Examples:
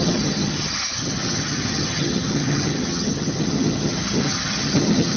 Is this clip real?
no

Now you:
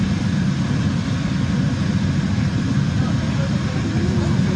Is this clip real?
yes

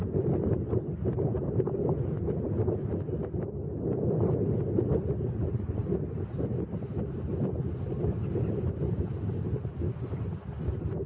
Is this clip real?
yes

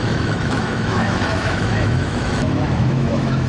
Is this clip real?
no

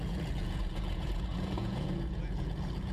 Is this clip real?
no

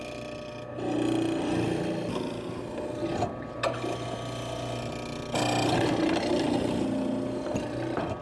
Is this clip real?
yes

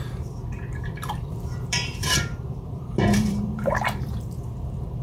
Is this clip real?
no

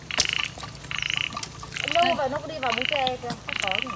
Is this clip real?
yes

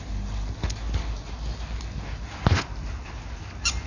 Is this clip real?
yes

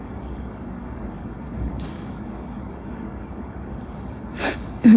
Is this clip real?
no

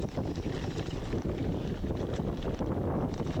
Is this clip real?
yes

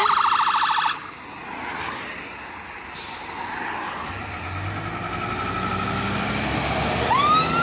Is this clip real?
yes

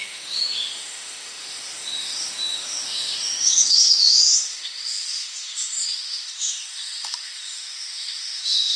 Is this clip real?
no